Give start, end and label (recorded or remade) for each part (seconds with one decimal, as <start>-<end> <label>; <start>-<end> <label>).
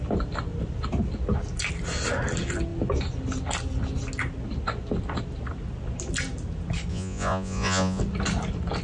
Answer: 0.0-6.9 recorded; 6.9-8.0 remade; 8.0-8.8 recorded